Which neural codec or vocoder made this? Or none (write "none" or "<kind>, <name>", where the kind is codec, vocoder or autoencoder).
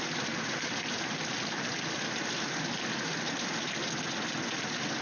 none